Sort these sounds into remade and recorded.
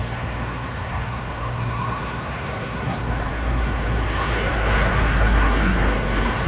remade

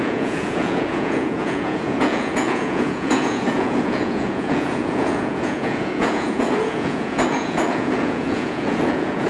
remade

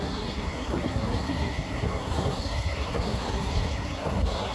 remade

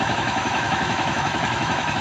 remade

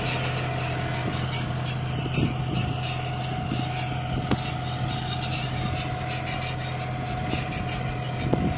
recorded